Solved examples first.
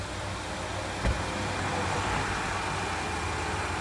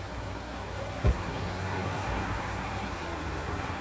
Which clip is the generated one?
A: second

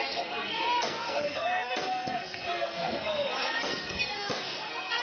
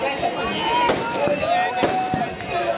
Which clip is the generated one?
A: first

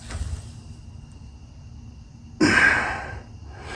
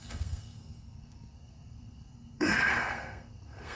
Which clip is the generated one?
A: second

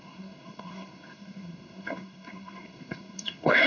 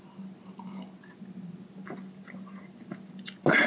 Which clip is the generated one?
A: first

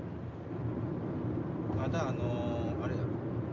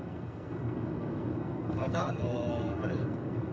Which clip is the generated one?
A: second